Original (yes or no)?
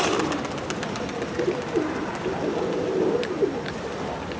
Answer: yes